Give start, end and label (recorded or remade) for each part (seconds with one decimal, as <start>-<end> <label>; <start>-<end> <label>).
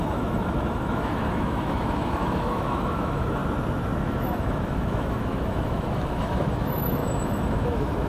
0.0-3.4 remade; 3.4-4.0 recorded; 4.0-8.1 remade